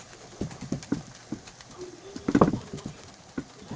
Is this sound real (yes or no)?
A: yes